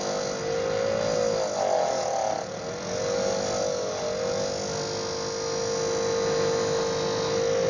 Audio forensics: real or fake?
real